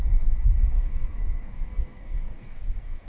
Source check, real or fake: fake